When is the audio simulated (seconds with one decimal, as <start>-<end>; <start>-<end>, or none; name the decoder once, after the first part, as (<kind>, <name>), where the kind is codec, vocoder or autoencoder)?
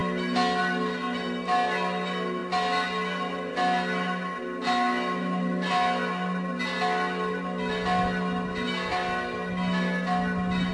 none